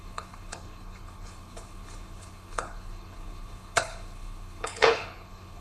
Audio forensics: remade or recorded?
remade